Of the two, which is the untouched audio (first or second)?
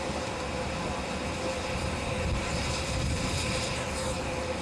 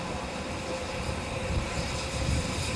first